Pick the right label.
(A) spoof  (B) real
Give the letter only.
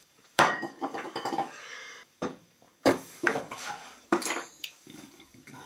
A